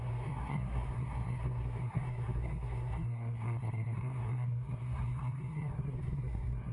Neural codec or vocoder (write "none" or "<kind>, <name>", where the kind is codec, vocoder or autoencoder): codec, SNAC